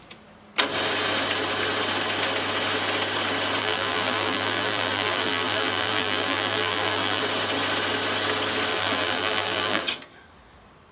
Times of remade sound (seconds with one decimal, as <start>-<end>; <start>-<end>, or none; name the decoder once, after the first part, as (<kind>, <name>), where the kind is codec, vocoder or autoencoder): 3.6-7.2 (vocoder, BigVGAN v2); 8.7-9.8